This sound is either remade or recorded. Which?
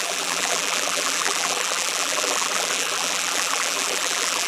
remade